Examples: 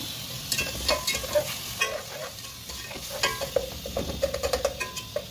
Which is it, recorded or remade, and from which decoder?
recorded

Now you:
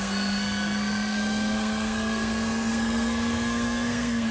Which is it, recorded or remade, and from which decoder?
remade, codec, SNAC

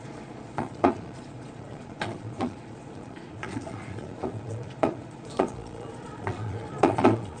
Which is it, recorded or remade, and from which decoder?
remade, vocoder, Vocos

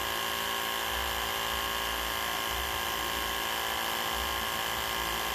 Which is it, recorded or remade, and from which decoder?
recorded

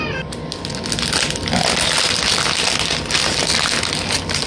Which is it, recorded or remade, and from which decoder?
recorded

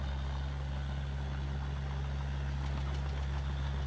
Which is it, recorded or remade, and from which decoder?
recorded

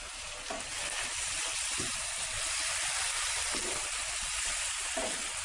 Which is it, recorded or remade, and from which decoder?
remade, vocoder, BigVGAN v2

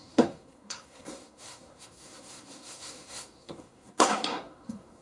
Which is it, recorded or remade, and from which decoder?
remade, codec, SNAC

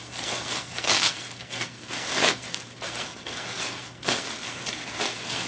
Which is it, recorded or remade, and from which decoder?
remade, codec, SNAC